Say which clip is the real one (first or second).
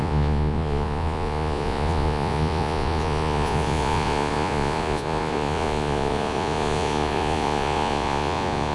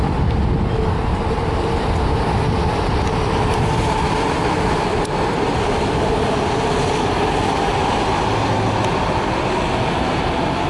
second